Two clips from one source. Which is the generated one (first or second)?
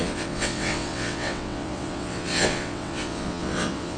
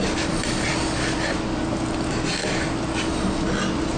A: first